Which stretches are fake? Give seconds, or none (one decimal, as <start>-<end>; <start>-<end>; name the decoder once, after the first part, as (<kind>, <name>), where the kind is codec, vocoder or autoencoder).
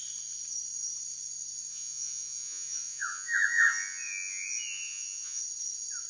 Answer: 1.7-5.4 (vocoder, Vocos)